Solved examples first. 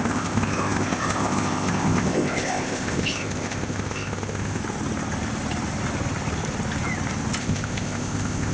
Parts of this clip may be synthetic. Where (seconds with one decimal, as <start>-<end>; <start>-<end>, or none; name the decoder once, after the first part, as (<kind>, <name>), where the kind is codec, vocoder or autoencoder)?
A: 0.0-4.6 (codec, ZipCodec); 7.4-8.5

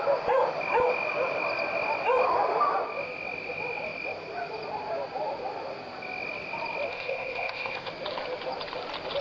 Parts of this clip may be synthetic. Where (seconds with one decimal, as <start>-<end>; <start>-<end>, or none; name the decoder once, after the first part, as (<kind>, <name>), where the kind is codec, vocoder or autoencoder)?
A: 6.9-7.9 (codec, ZipCodec)

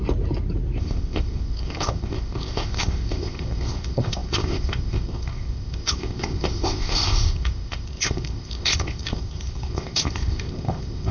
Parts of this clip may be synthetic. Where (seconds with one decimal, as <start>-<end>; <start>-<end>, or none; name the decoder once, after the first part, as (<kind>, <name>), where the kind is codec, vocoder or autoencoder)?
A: 0.8-11.1 (codec, ZipCodec)